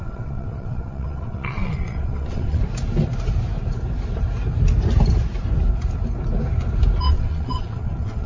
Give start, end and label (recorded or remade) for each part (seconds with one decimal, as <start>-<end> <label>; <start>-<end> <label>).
0.0-2.6 remade; 2.6-7.0 recorded; 7.0-8.3 remade